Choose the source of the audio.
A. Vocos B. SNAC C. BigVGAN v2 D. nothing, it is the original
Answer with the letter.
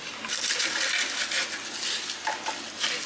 D